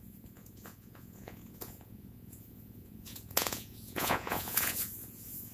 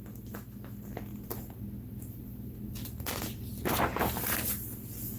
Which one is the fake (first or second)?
first